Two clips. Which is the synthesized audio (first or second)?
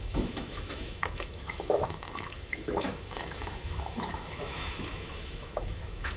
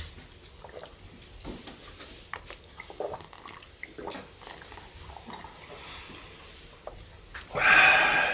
first